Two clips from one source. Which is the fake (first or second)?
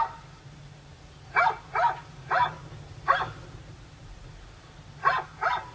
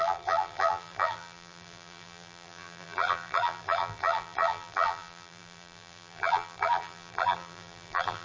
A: second